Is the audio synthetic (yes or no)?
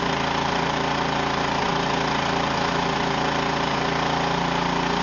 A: no